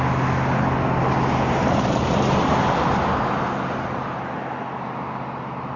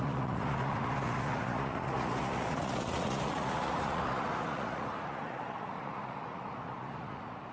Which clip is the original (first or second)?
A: first